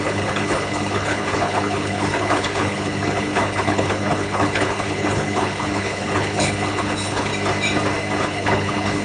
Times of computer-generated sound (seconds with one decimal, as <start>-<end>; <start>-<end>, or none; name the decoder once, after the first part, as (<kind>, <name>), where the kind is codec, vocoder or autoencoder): 0.0-7.3 (codec, HILCodec); 8.2-9.0